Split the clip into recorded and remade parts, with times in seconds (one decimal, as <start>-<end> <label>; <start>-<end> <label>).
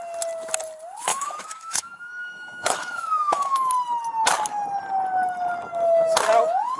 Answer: 0.0-1.1 recorded; 1.1-3.7 remade; 3.7-6.8 recorded